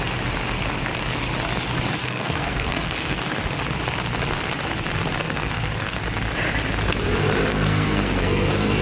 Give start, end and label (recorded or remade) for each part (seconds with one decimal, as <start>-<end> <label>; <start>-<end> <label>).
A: 0.0-2.0 recorded; 2.0-3.2 remade; 3.2-5.2 recorded; 5.2-6.0 remade; 6.0-7.5 recorded; 7.5-8.8 remade